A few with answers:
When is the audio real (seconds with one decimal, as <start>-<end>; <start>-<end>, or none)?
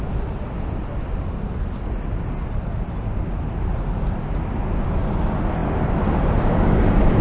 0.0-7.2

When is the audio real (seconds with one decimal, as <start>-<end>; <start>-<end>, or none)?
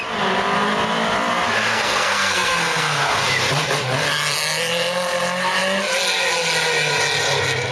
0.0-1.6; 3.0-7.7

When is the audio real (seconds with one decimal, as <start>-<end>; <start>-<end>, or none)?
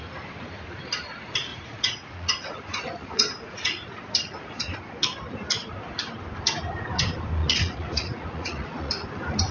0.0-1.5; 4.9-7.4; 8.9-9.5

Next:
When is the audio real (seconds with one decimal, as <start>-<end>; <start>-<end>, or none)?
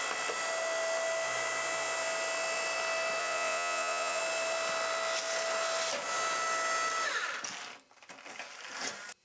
0.0-3.2; 4.2-9.2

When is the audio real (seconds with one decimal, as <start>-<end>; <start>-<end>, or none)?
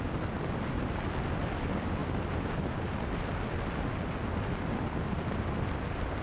0.0-6.2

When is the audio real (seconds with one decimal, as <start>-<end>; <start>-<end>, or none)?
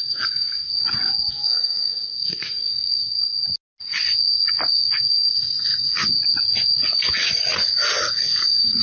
0.7-1.3; 3.1-5.0; 6.1-8.0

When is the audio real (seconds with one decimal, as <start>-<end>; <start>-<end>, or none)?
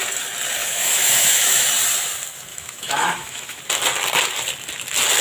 0.0-0.6; 1.7-2.5; 3.6-5.2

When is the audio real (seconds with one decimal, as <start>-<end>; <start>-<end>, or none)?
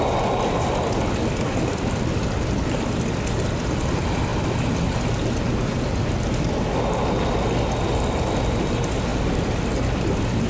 0.0-10.5